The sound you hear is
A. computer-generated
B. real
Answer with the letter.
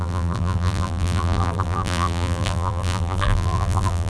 A